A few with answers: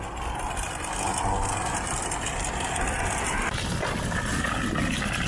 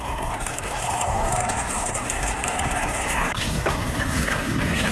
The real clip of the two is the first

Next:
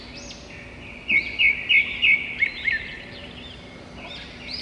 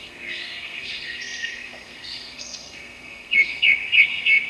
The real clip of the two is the first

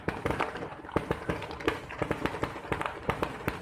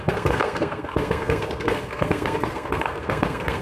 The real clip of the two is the first